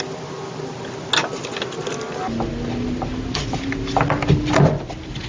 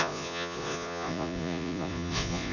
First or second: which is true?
first